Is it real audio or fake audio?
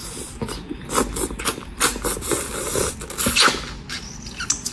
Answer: real